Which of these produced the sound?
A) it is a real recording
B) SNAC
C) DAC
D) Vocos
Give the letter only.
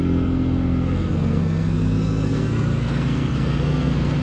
B